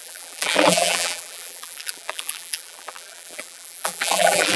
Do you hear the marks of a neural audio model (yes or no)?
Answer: yes